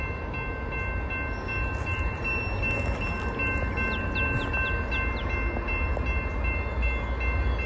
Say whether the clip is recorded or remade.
recorded